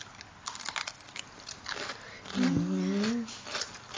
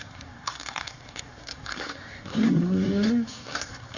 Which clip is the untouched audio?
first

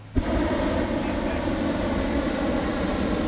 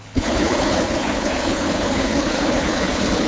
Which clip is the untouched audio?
first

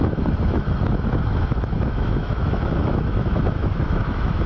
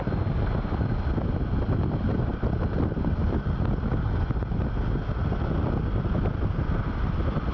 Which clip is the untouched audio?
second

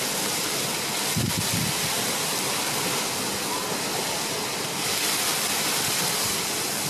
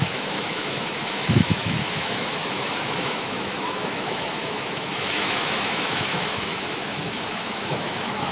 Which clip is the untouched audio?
first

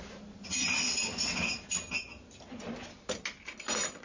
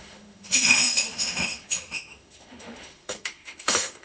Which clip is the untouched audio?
first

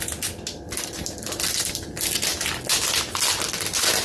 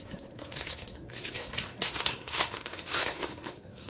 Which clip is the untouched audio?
first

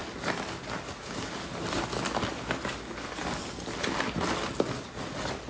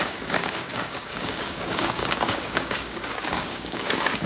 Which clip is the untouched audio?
first